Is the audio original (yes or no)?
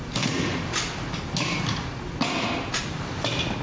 yes